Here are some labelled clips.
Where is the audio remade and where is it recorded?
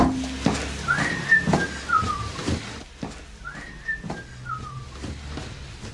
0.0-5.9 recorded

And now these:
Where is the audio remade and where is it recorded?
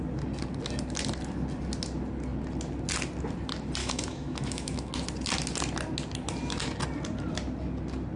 0.0-3.8 recorded; 3.8-4.9 remade; 4.9-8.2 recorded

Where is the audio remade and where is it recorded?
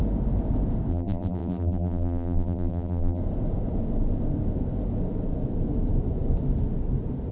0.0-0.9 recorded; 0.9-3.2 remade; 3.2-7.3 recorded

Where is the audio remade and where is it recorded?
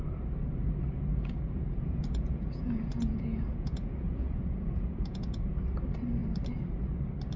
0.0-1.1 recorded; 1.1-5.5 remade; 5.5-7.4 recorded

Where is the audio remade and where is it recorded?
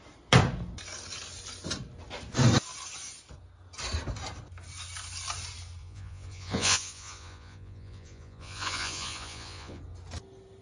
0.0-5.8 recorded; 5.8-9.8 remade; 9.8-10.6 recorded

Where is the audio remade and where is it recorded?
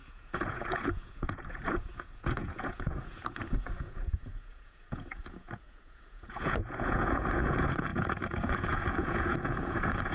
0.0-10.1 remade